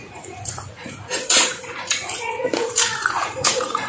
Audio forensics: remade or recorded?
remade